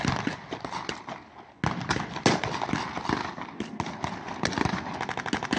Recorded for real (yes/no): yes